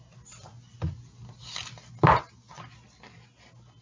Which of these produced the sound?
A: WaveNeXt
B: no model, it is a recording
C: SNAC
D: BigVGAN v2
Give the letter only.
B